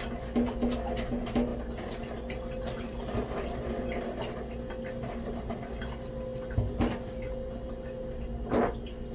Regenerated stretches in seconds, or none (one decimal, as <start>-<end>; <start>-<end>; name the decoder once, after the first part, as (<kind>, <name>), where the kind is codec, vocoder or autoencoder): none